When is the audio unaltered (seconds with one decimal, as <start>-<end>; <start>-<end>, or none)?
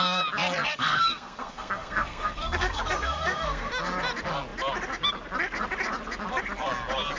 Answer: 0.0-0.7; 3.7-7.2